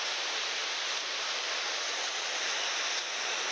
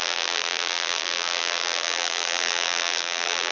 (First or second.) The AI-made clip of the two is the second